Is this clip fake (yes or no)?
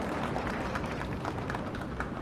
yes